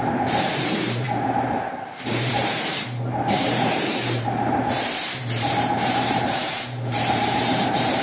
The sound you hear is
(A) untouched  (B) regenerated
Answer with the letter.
B